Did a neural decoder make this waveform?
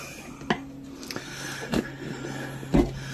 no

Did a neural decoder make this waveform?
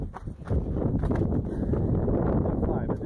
no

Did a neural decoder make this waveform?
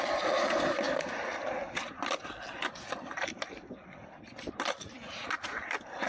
no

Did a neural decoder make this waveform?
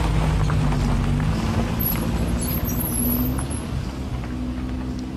no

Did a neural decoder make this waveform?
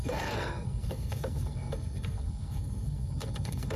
yes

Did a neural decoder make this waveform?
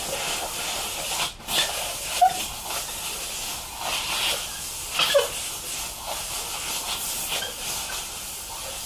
no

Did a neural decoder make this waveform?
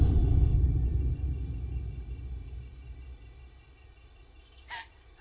no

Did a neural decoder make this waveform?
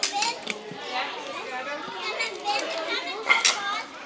no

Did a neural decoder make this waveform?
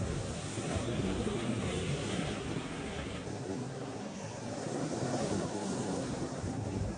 yes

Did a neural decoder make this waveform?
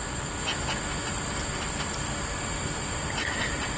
no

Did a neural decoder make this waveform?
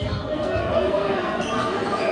yes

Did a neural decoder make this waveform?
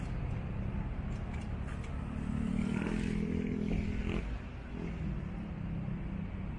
no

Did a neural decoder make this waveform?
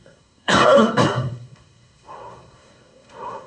yes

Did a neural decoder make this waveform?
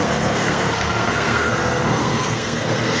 yes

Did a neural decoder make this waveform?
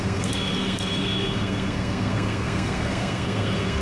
yes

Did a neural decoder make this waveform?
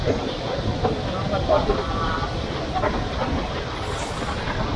no